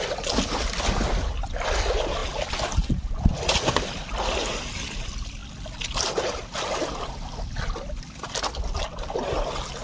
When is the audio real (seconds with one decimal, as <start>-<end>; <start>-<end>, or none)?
0.0-9.8

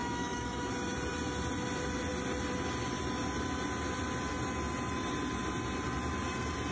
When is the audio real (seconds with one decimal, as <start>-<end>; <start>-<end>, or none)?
0.7-6.7

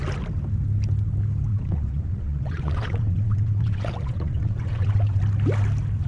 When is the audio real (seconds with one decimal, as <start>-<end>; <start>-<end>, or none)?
0.0-1.5; 5.2-6.1

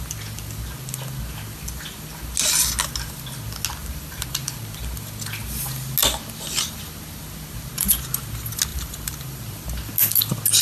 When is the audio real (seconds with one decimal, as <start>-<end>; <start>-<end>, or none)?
0.0-3.8; 4.6-8.7; 9.6-10.6